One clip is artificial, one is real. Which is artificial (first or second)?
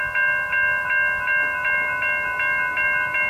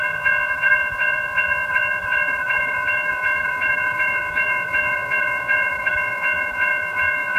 second